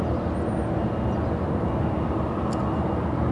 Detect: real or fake real